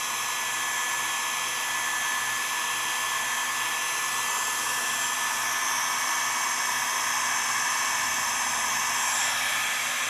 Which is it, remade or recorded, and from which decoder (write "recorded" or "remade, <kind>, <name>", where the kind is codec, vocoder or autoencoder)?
recorded